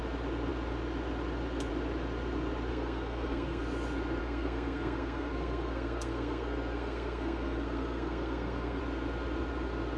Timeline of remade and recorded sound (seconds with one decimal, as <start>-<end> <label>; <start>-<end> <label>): 0.0-2.7 recorded; 2.7-3.6 remade; 3.6-4.2 recorded; 4.2-8.8 remade; 8.8-10.0 recorded

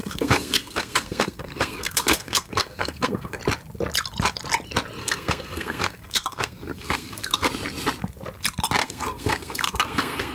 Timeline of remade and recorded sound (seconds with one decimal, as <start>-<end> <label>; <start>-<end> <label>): 0.0-3.4 remade; 3.4-5.0 recorded; 5.0-7.5 remade; 7.5-8.8 recorded; 8.8-10.3 remade

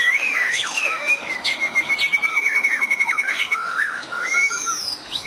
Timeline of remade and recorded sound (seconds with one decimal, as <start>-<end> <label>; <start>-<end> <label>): 0.0-1.9 remade; 1.9-2.3 recorded; 2.3-5.3 remade

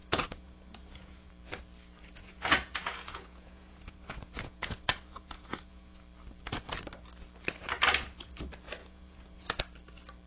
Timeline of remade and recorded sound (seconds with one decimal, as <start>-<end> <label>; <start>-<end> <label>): 0.0-1.3 remade; 1.3-2.2 recorded; 2.2-6.0 remade; 6.0-8.8 recorded; 8.8-9.6 remade; 9.6-10.3 recorded

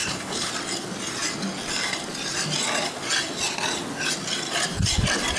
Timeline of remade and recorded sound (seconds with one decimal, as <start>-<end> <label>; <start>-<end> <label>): 0.0-0.5 remade; 0.5-5.4 recorded